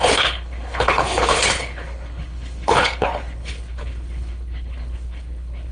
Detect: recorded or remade remade